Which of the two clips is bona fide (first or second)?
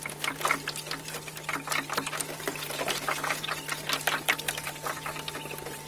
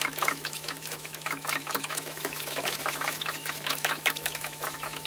first